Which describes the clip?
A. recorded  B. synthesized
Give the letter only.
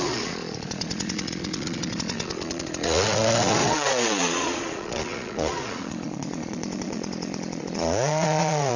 B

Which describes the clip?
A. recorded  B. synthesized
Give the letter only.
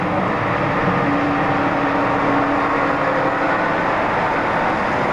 A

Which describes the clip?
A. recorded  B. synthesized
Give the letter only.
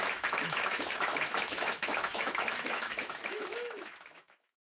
B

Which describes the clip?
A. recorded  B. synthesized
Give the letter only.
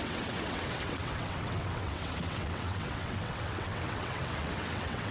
B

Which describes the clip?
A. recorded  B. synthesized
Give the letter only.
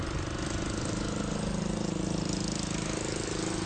A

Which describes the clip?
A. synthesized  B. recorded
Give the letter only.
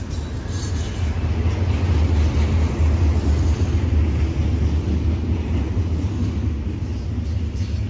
B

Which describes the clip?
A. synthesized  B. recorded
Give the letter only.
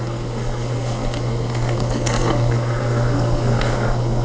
A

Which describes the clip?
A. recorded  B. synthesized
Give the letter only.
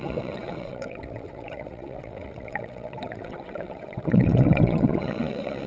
B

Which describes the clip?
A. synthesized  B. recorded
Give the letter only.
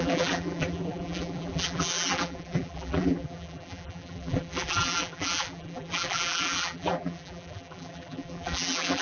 A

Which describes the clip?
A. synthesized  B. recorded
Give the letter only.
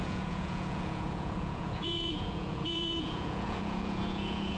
A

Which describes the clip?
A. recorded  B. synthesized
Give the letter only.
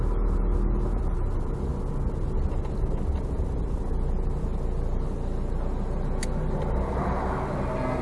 A